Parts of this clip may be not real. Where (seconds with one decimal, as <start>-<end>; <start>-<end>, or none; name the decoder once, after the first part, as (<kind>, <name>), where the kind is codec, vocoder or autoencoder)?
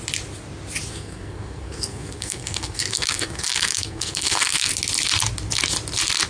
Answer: 0.9-4.7 (codec, SNAC)